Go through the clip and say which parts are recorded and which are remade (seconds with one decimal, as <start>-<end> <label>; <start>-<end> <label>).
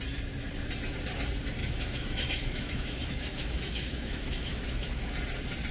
0.0-1.6 recorded; 1.6-5.0 remade; 5.0-5.7 recorded